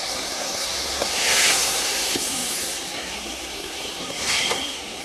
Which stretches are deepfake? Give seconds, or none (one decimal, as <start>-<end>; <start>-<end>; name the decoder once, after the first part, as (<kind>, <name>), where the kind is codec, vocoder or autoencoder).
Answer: 0.0-5.0 (codec, SNAC)